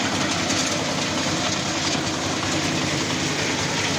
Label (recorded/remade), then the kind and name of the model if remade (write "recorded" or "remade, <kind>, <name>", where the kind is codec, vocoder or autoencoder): recorded